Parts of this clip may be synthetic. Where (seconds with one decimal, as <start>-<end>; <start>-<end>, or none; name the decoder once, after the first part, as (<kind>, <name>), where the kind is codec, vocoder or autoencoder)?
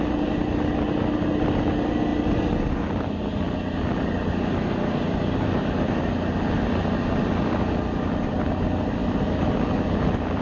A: 9.0-9.5 (vocoder, BigVGAN v2)